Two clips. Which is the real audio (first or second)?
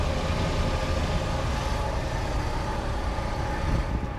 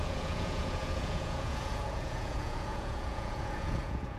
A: first